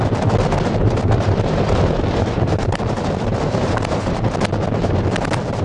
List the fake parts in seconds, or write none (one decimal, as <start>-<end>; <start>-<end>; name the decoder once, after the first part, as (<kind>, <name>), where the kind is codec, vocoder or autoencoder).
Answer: 0.8-4.2 (vocoder, BigVGAN v2)